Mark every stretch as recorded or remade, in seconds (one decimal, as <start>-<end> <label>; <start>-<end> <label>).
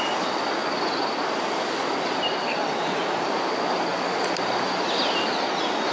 0.0-2.5 recorded; 2.5-3.0 remade; 3.0-5.9 recorded